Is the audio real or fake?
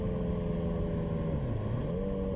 real